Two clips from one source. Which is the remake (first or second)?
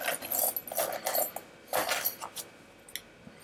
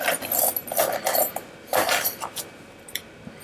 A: second